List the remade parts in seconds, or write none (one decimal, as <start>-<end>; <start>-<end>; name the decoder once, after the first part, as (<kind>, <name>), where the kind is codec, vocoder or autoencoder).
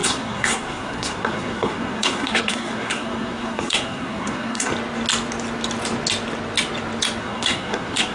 0.0-4.7 (codec, SNAC); 7.2-8.1